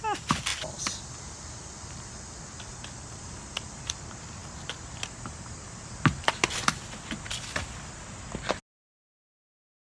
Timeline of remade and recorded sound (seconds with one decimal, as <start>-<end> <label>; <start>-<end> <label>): 0.0-4.4 recorded; 4.4-6.6 remade; 6.6-9.9 recorded